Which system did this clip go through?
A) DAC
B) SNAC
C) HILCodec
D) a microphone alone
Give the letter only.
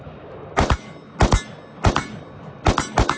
D